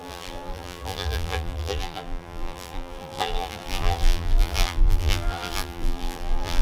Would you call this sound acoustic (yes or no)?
no